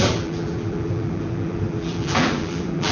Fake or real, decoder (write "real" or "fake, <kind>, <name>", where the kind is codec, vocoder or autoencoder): fake, vocoder, BigVGAN v2